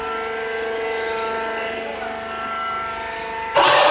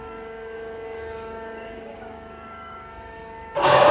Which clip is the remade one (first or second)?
second